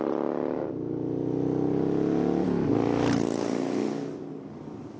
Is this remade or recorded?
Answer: recorded